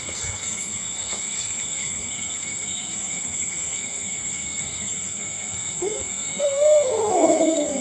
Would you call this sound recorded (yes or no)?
no